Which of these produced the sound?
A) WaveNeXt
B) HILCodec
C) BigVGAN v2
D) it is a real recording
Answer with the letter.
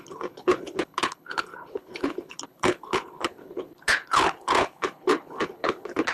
B